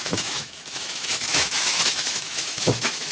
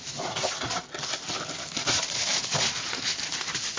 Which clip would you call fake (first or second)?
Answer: first